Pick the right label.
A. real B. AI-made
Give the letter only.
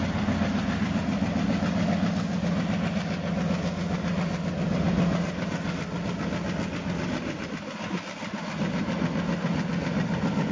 A